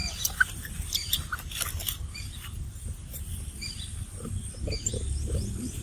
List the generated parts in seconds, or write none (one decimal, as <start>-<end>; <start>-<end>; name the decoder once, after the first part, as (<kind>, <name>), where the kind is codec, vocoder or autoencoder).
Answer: 0.0-1.1 (vocoder, BigVGAN v2); 1.8-3.2